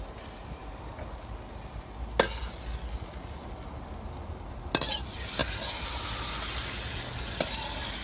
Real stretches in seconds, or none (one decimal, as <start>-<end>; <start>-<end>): 0.0-8.0